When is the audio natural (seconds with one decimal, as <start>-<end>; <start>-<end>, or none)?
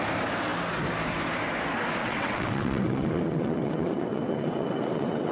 0.0-2.0